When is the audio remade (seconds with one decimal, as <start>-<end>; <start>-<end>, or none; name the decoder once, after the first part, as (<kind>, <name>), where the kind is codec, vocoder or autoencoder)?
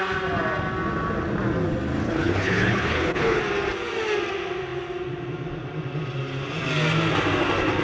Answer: 2.0-3.4 (codec, HILCodec)